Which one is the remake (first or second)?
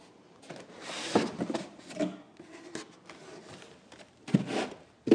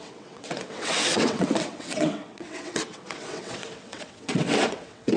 second